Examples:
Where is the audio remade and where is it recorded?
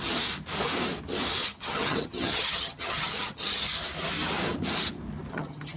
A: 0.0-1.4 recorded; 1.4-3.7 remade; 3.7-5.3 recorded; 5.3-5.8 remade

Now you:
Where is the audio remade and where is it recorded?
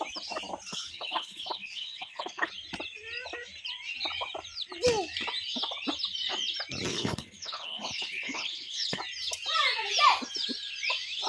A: 0.0-0.7 recorded; 0.7-2.5 remade; 2.5-6.9 recorded; 6.9-9.0 remade; 9.0-11.3 recorded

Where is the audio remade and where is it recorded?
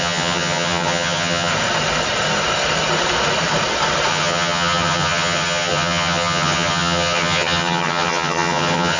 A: 0.0-1.5 remade; 1.5-4.1 recorded; 4.1-9.0 remade